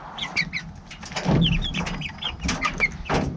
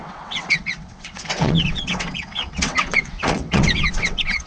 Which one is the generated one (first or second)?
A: second